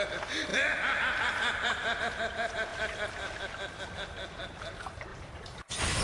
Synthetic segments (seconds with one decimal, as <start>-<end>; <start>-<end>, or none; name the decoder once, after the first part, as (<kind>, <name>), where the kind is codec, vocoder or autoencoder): 0.5-2.0 (vocoder, BigVGAN v2); 2.7-3.8; 5.1-6.0